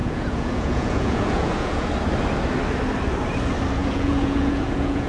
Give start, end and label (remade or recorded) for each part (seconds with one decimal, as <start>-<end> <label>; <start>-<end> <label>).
0.0-1.9 remade; 1.9-3.8 recorded; 3.8-5.1 remade